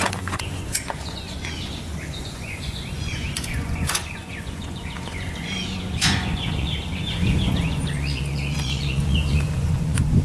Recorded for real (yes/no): no